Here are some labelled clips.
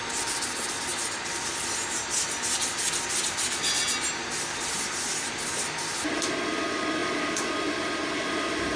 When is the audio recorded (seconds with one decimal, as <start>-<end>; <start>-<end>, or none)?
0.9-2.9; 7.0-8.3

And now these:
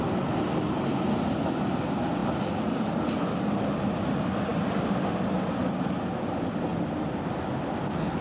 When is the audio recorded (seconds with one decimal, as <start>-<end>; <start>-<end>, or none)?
0.0-8.2

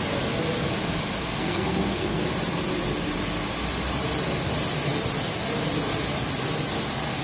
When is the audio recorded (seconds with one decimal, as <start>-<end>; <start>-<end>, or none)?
0.0-1.2; 2.3-7.2

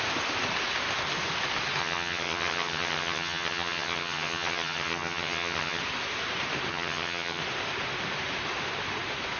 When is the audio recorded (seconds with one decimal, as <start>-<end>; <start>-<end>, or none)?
0.0-1.8; 5.8-6.7; 7.4-9.4